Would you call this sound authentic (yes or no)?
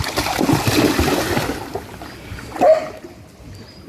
yes